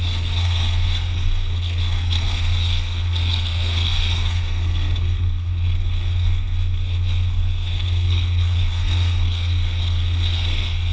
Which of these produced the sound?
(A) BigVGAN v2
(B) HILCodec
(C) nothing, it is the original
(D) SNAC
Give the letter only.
D